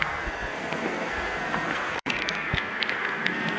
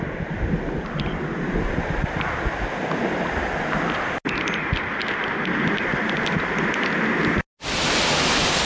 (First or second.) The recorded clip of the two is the second